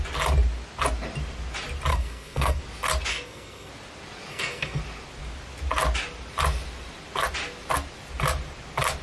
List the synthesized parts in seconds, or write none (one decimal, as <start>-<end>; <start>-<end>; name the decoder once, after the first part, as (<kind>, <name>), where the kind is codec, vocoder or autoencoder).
1.9-2.6 (codec, SNAC); 3.1-3.7; 4.3-4.8